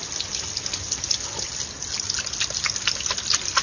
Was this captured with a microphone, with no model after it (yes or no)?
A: yes